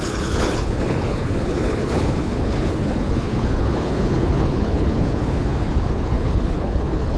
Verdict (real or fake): fake